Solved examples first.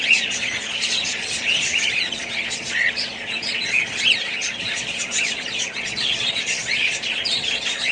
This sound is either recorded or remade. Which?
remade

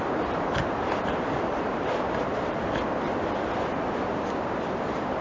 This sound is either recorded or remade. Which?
remade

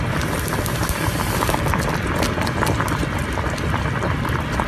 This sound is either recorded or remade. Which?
remade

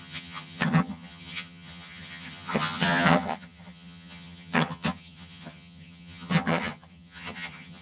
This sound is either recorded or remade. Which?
remade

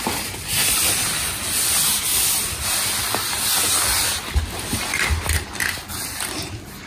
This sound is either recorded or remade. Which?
recorded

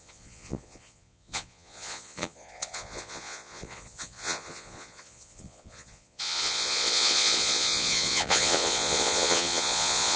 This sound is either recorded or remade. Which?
remade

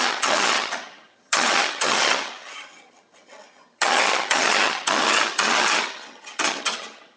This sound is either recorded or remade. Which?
remade